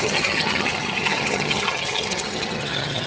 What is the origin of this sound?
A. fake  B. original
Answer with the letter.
A